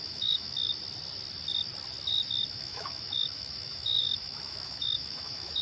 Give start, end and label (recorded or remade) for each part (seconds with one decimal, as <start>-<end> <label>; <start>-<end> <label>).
0.0-0.7 remade; 0.7-2.5 recorded; 2.5-5.6 remade